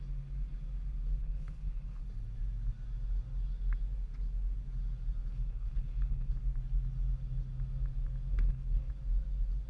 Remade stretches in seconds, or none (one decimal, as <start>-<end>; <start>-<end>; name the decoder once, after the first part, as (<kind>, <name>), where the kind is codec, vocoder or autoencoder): 1.2-2.0 (codec, HILCodec); 5.3-6.3; 8.3-8.9